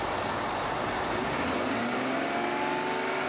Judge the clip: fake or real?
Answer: real